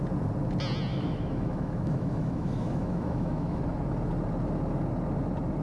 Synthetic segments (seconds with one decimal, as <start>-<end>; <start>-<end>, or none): 0.9-3.6